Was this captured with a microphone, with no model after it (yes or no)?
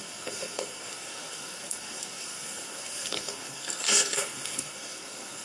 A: no